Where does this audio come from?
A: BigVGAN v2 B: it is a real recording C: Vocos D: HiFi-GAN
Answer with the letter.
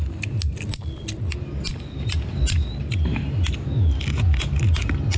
B